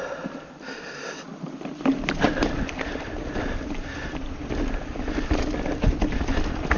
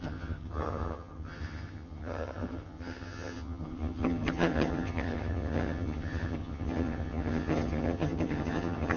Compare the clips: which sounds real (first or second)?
first